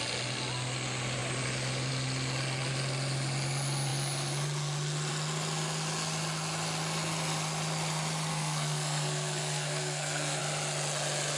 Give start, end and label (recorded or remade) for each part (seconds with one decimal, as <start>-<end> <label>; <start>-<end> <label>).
0.0-8.3 recorded; 8.3-10.4 remade; 10.4-11.4 recorded

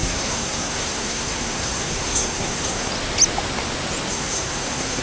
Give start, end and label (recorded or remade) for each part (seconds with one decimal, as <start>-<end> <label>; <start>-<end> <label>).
0.0-2.9 remade; 2.9-4.1 recorded; 4.1-5.0 remade

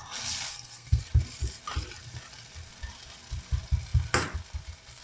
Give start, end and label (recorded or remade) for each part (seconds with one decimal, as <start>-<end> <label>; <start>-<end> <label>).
0.0-0.5 recorded; 0.5-1.0 remade; 1.0-5.0 recorded

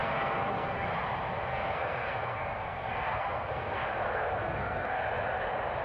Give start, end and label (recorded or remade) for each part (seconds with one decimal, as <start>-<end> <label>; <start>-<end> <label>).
0.0-0.9 remade; 0.9-1.5 recorded; 1.5-5.0 remade; 5.0-5.8 recorded

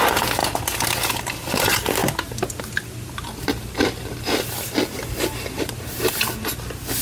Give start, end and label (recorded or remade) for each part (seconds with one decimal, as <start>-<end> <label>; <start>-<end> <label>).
0.0-7.0 recorded

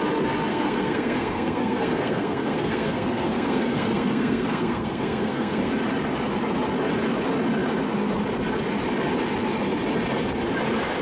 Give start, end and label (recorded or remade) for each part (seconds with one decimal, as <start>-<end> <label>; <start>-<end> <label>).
0.0-0.5 recorded; 0.5-5.7 remade; 5.7-11.0 recorded

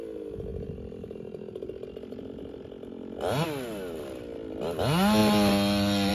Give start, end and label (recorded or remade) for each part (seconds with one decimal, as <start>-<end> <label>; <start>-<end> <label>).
0.0-6.1 recorded